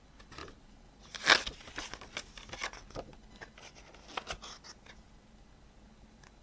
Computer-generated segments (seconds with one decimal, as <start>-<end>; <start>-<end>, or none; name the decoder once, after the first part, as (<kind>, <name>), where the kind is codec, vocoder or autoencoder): 0.4-1.0 (vocoder, BigVGAN v2)